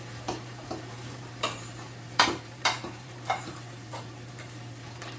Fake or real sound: fake